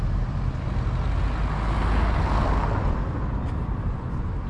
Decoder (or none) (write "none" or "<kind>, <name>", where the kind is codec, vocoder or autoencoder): none